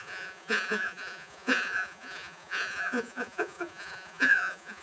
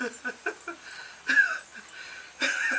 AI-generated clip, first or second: first